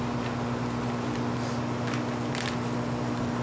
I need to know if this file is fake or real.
real